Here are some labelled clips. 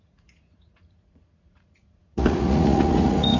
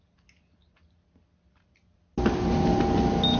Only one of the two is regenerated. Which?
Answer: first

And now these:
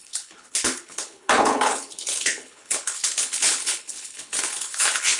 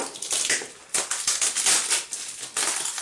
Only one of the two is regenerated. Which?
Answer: first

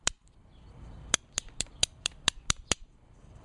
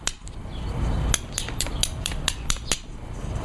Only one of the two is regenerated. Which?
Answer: first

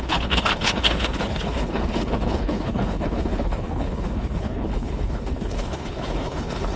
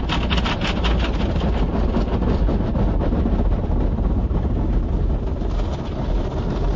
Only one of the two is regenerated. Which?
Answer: first